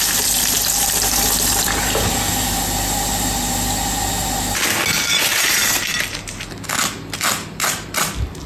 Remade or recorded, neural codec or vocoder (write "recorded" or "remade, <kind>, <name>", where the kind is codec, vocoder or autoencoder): recorded